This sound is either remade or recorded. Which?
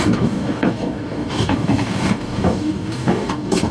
remade